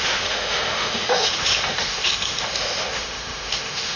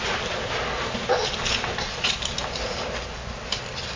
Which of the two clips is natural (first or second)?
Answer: second